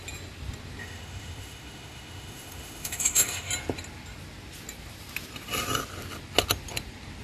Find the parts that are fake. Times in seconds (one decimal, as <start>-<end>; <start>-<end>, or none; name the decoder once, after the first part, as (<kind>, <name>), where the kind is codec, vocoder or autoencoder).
0.8-3.5 (autoencoder, DAC-VAE)